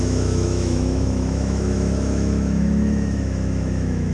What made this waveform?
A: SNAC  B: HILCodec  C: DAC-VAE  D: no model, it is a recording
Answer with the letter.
C